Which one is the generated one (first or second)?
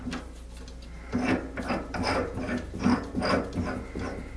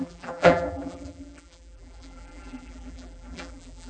second